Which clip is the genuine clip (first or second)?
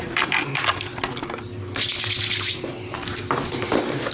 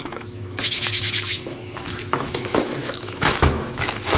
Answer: first